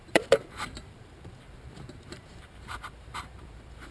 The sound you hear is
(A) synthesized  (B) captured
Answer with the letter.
A